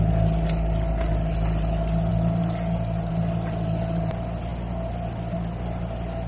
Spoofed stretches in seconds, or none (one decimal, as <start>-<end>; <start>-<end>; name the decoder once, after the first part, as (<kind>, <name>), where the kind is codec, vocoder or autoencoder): none